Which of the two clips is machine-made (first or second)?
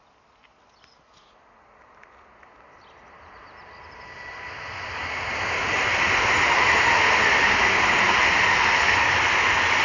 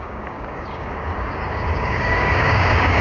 second